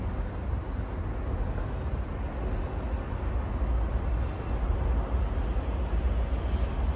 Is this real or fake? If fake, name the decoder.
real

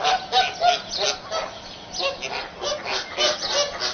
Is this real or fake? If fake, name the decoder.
real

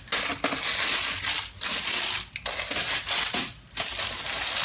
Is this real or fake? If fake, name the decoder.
real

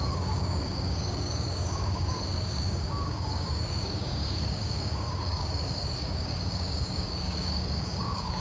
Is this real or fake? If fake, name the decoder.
fake, codec, DAC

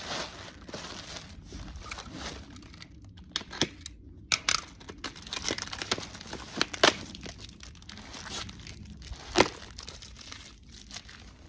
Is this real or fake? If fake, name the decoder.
real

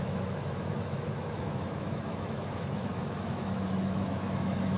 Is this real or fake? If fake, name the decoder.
fake, autoencoder, DAC-VAE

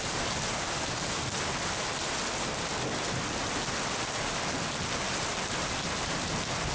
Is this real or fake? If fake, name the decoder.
real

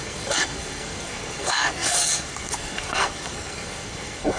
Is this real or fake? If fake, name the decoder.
fake, codec, SNAC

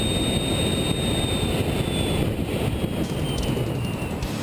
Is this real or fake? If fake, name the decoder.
real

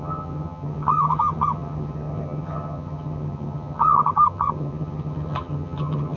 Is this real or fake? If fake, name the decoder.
fake, vocoder, HiFi-GAN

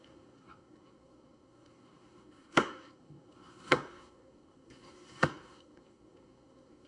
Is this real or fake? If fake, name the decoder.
fake, codec, SNAC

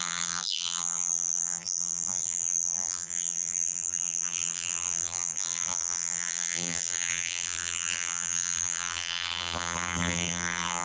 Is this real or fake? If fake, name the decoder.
fake, vocoder, BigVGAN v2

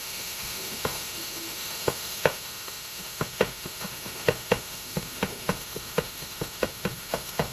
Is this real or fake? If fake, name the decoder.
fake, autoencoder, DAC-VAE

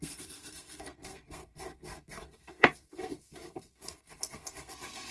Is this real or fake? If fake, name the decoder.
fake, codec, SNAC